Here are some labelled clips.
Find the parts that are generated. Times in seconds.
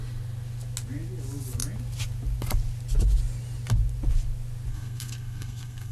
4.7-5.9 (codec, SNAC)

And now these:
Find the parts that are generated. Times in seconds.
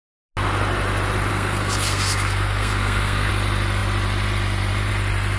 1.3-3.3 (codec, SNAC)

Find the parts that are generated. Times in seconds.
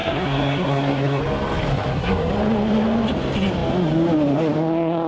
0.0-1.2 (codec, SNAC); 1.7-2.3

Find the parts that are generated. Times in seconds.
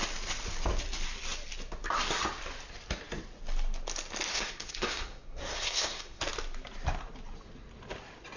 4.3-6.2 (codec, SNAC)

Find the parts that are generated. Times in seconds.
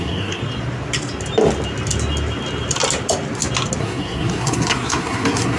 0.0-0.4 (codec, SNAC); 3.8-5.6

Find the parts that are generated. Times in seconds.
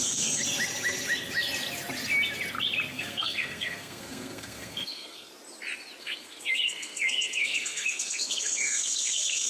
0.0-0.4 (codec, SNAC); 2.9-5.3; 6.0-9.5